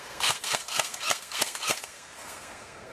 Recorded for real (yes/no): no